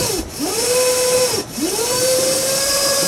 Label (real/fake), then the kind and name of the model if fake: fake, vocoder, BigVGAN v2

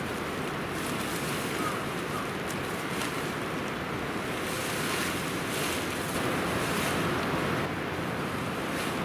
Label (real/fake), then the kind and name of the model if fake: real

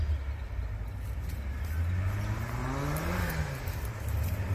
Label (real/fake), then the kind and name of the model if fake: real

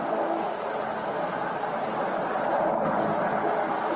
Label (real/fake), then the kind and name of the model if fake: fake, vocoder, BigVGAN v2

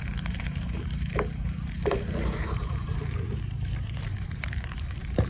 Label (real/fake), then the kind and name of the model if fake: fake, vocoder, BigVGAN v2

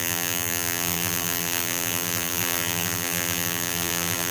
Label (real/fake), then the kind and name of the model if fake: fake, vocoder, BigVGAN v2